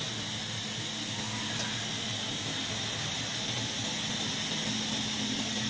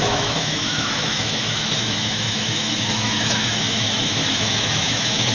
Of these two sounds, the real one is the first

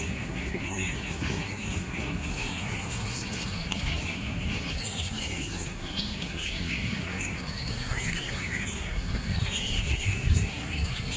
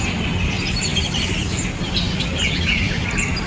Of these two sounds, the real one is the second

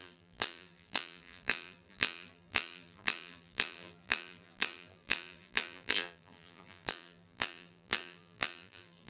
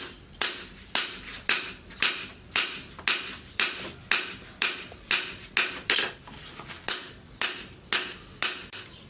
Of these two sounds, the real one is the second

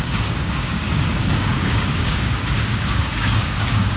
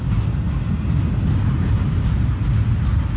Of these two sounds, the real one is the second